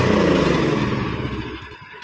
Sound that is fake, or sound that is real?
real